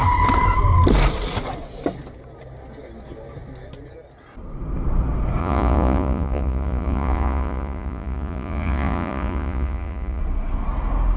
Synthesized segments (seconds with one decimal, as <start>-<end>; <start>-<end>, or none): 5.4-10.2

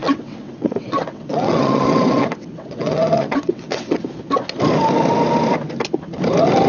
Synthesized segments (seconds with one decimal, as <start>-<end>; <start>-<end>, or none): 0.0-4.0